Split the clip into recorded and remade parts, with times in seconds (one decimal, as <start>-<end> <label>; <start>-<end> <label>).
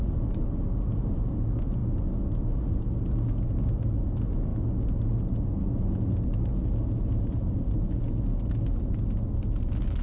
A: 0.0-10.0 recorded